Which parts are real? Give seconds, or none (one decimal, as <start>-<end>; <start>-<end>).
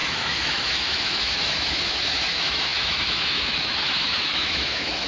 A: none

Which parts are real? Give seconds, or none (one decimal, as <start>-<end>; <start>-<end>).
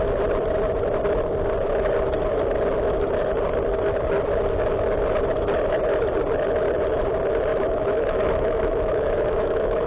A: 0.0-7.5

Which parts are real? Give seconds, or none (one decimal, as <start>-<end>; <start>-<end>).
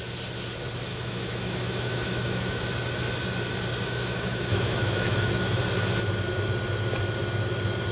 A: 0.0-0.9; 2.6-3.8; 5.6-7.9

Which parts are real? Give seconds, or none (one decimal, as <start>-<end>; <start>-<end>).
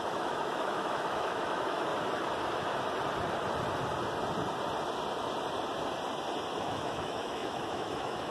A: 1.9-6.6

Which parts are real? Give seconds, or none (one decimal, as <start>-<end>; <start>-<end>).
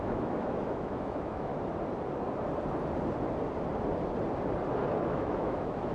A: 1.5-5.0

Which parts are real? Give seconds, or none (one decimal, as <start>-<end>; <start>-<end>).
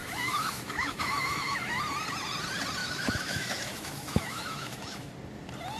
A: 1.8-2.8; 5.1-5.8